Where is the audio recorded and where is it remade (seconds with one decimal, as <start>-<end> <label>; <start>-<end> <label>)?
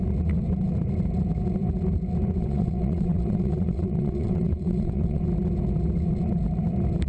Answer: 0.0-2.4 recorded; 2.4-5.2 remade; 5.2-7.1 recorded